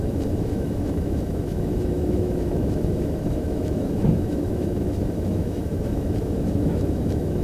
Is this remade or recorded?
remade